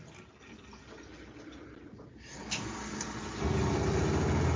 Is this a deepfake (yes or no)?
no